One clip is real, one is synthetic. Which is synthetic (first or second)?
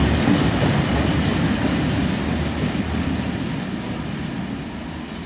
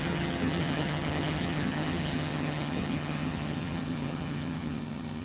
second